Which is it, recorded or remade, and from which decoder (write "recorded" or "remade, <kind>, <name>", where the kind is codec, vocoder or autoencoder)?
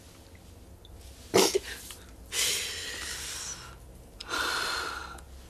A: recorded